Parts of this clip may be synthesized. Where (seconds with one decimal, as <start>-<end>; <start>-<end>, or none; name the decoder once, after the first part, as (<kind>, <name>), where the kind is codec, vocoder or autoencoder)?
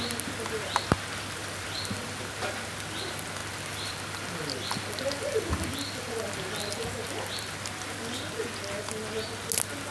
1.4-2.2 (vocoder, BigVGAN v2); 3.4-7.3